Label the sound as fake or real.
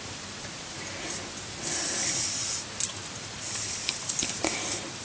fake